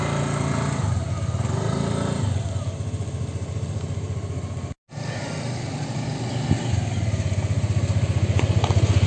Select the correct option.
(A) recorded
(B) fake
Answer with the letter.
A